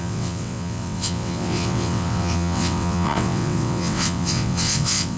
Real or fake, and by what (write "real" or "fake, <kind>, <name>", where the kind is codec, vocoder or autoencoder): fake, vocoder, WaveNeXt